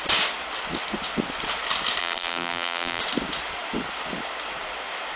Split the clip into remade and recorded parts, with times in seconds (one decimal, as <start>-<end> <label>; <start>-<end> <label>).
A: 0.0-2.0 recorded; 2.0-3.0 remade; 3.0-5.2 recorded